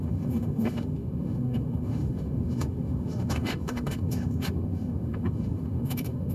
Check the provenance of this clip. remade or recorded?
remade